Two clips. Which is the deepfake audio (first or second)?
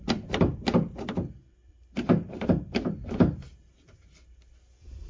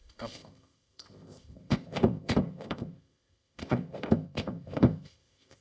second